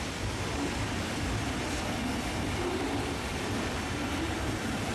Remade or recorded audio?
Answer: remade